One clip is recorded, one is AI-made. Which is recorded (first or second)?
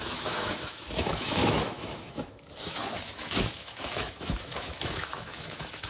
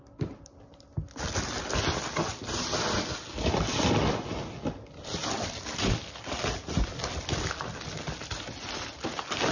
second